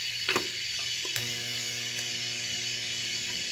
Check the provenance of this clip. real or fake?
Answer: fake